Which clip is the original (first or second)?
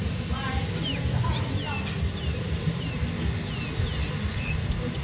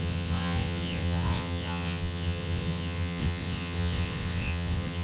first